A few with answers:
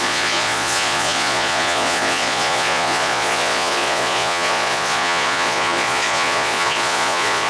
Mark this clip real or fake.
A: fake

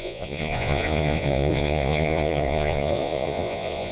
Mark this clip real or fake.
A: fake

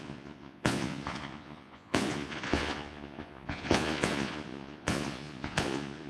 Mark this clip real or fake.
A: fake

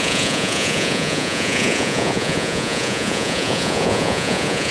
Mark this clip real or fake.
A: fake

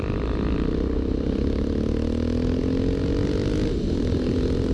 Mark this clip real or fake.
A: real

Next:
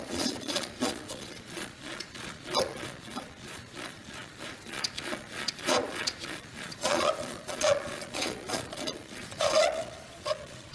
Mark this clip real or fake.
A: fake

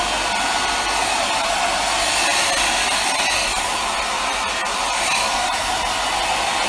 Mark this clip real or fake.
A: real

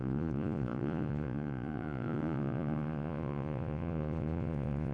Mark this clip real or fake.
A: fake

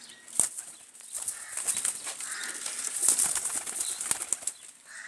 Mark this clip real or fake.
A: real